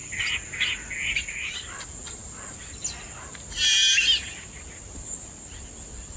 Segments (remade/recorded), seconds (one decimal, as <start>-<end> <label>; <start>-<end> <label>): 0.0-6.2 recorded